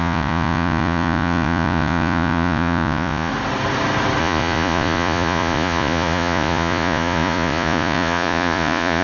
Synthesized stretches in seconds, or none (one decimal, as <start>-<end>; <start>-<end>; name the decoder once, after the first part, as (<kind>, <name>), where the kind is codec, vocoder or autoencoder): 0.0-3.3 (vocoder, Vocos); 4.2-9.0